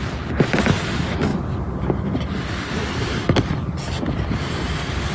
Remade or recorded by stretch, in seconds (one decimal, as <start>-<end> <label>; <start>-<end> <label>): 0.0-5.1 recorded